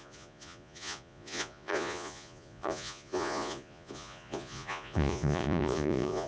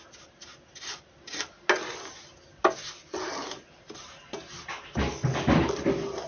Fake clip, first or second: first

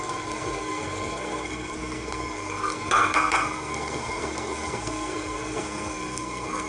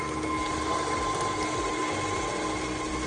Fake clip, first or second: first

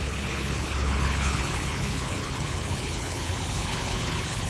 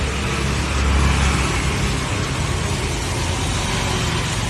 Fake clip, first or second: first